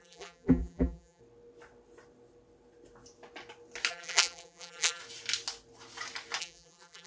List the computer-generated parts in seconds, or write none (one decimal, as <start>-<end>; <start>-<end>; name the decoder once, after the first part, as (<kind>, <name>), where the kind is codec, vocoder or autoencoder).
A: 0.0-1.2 (vocoder, BigVGAN v2); 3.9-5.0; 6.4-7.1